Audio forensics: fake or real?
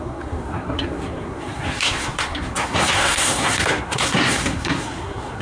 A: fake